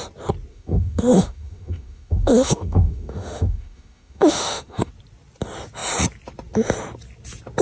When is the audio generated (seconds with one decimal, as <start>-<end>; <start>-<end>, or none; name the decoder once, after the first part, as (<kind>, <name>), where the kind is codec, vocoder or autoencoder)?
0.5-4.9 (autoencoder, DAC-VAE)